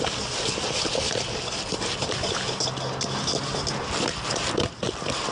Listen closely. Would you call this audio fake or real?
real